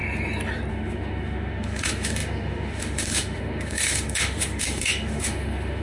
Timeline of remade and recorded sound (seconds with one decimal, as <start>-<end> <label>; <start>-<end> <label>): 0.0-0.7 recorded; 0.7-5.8 remade